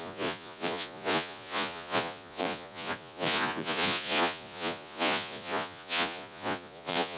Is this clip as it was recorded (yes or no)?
no